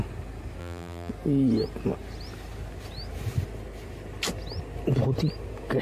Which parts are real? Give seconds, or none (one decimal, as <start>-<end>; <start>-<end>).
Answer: 0.0-0.6; 1.1-5.8